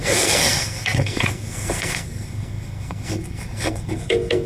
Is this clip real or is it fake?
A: fake